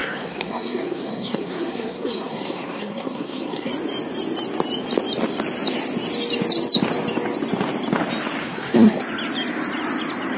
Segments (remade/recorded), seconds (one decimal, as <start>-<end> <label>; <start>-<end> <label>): 0.0-3.7 remade; 3.7-8.4 recorded; 8.4-9.0 remade; 9.0-10.4 recorded